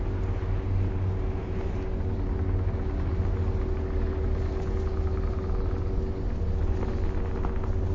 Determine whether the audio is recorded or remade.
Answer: recorded